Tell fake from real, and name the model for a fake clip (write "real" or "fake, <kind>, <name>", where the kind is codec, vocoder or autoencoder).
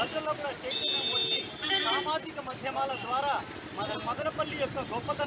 real